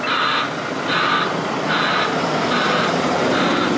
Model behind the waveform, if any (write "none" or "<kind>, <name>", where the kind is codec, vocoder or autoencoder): none